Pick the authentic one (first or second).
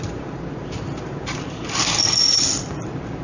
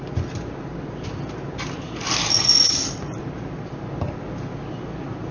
second